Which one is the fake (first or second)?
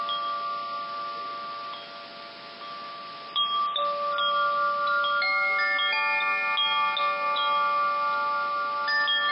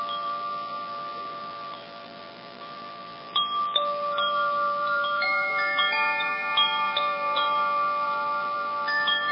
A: second